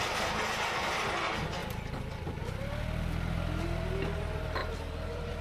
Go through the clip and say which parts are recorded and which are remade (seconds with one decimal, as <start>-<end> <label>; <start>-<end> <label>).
0.0-5.4 recorded